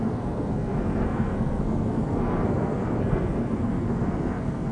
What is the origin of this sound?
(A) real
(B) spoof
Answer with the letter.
B